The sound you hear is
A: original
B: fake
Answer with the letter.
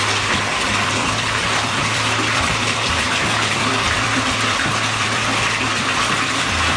B